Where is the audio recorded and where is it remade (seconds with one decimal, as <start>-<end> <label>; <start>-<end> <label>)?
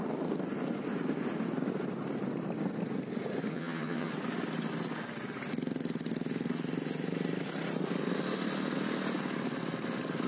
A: 0.0-3.5 recorded; 3.5-4.1 remade; 4.1-10.3 recorded